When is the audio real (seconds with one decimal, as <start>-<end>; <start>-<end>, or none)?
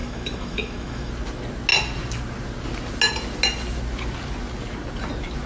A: 1.1-5.5